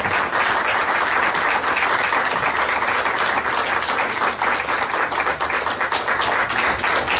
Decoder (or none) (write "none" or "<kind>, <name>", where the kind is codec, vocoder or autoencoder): none